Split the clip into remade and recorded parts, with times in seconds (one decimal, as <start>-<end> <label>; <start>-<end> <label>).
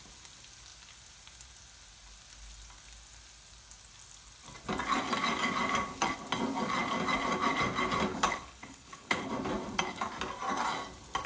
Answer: 0.0-8.1 recorded; 8.1-9.3 remade; 9.3-11.3 recorded